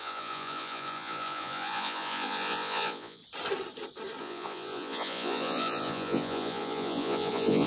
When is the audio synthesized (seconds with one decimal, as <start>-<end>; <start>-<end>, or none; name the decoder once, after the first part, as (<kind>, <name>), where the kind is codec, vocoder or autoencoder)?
0.0-3.2 (vocoder, Vocos); 4.2-7.7